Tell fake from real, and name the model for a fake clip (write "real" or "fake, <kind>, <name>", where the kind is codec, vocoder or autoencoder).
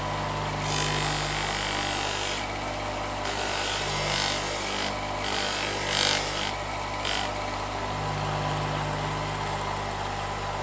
real